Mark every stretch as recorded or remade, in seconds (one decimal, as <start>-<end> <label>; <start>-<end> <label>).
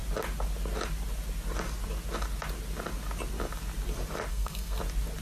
0.0-4.3 recorded; 4.3-4.8 remade; 4.8-5.2 recorded